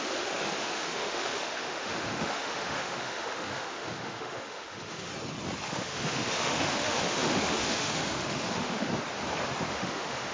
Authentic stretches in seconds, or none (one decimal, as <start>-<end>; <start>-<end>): 5.1-5.7; 8.9-9.7